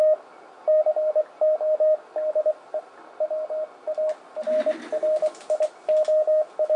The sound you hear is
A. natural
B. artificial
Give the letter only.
A